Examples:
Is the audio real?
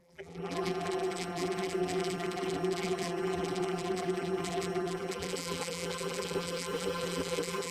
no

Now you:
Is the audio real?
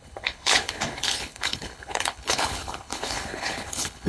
no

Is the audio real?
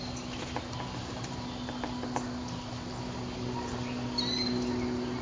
yes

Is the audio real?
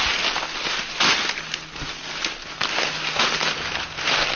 yes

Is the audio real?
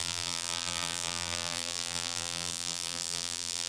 no